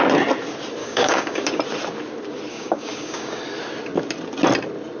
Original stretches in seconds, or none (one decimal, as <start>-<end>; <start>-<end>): 0.0-0.8; 1.6-2.5; 3.4-5.0